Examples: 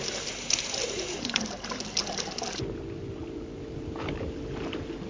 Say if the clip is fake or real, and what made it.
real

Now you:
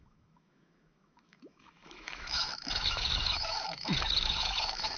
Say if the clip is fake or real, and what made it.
fake, autoencoder, DAC-VAE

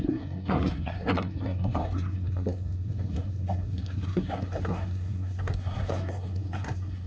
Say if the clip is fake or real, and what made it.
fake, codec, SNAC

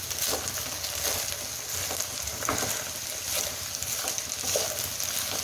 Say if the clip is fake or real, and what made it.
real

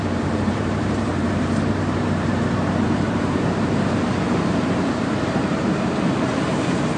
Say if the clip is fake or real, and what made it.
fake, vocoder, BigVGAN v2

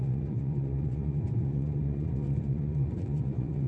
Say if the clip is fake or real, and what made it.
fake, vocoder, Vocos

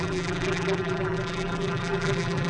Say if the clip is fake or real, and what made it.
fake, vocoder, BigVGAN v2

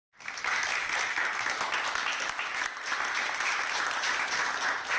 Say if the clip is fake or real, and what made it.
real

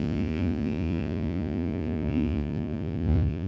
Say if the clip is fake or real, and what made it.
fake, vocoder, Vocos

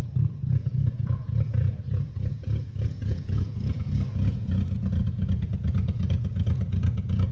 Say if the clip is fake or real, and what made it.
fake, vocoder, Vocos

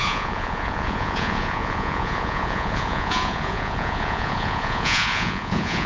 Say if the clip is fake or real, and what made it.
fake, vocoder, Vocos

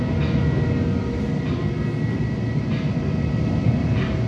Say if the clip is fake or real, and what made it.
real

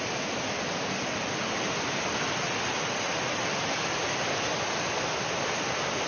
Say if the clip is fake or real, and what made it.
real